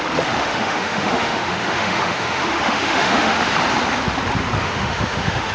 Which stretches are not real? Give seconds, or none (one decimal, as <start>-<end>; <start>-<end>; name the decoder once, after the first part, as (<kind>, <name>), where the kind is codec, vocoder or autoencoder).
0.4-3.4 (autoencoder, DAC-VAE); 4.6-5.5